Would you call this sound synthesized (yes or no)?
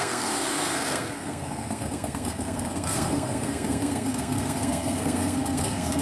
yes